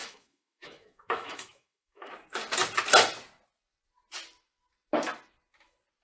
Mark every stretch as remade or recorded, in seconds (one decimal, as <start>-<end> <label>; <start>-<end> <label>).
0.0-2.1 remade; 2.1-6.0 recorded